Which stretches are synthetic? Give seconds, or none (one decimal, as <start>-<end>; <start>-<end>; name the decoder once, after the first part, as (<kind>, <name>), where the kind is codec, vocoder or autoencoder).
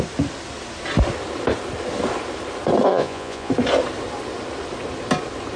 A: 2.9-3.5 (vocoder, Vocos)